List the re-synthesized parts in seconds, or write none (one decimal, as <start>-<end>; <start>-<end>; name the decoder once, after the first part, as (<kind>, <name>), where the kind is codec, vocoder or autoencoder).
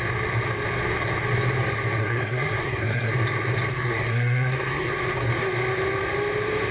2.0-3.1 (codec, SNAC); 3.7-4.9